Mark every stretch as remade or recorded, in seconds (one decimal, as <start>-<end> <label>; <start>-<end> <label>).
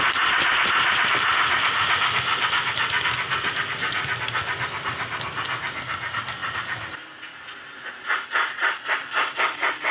0.0-9.9 recorded